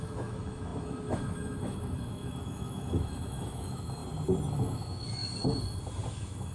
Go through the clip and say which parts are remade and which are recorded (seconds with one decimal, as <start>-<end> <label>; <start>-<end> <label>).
0.0-4.0 remade; 4.0-4.5 recorded; 4.5-5.2 remade; 5.2-6.1 recorded; 6.1-6.5 remade